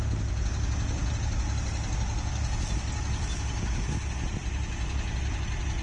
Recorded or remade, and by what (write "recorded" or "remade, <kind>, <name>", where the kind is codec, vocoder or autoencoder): recorded